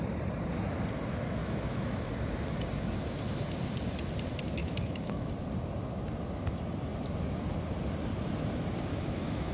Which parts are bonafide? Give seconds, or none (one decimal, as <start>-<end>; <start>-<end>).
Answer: 0.0-1.4; 2.1-4.6; 5.3-8.9